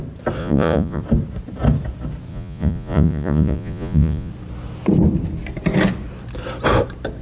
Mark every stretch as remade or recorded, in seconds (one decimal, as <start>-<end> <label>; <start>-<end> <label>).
0.0-0.4 recorded; 0.4-1.0 remade; 1.0-2.3 recorded; 2.3-4.3 remade; 4.3-7.2 recorded